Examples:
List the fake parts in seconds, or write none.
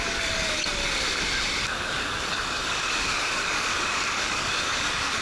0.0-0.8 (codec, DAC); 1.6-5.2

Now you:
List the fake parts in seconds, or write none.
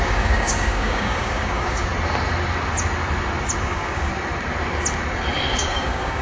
0.0-1.9 (codec, DAC); 3.6-4.1; 5.5-6.2